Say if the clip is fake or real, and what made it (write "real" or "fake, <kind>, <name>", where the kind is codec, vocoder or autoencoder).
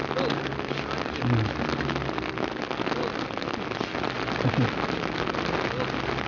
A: real